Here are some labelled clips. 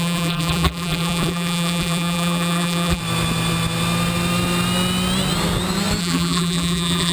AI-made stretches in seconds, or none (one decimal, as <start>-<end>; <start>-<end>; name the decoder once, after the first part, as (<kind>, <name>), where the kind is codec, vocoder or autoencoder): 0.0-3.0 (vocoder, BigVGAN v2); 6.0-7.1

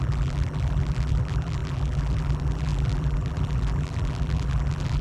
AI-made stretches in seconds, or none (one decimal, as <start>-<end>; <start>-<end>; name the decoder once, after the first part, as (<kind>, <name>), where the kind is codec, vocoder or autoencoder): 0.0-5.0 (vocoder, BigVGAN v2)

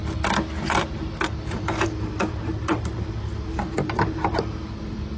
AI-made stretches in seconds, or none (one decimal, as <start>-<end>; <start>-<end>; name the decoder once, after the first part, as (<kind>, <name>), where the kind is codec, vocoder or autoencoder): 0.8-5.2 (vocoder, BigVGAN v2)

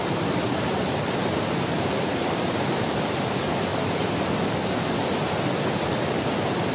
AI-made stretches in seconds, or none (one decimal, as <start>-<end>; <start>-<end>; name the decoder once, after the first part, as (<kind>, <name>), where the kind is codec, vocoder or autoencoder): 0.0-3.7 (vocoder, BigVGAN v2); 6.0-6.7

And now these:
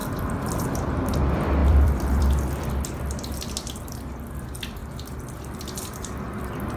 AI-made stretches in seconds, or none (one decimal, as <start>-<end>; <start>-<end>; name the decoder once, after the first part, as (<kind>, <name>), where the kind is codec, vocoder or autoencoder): 0.0-1.2 (vocoder, BigVGAN v2); 1.6-2.7

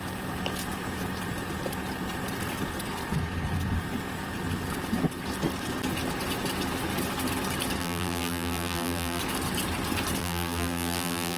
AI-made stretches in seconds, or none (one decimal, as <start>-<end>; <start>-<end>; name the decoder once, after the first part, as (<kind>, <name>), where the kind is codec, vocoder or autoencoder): 7.8-9.2 (vocoder, BigVGAN v2); 10.2-11.4

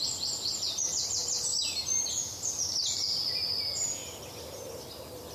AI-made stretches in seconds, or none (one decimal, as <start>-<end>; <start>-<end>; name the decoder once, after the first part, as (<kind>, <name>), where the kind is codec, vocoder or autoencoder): 1.2-3.5 (vocoder, BigVGAN v2)